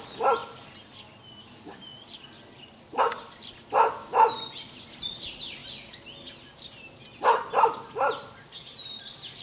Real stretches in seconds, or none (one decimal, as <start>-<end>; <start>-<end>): 0.0-9.4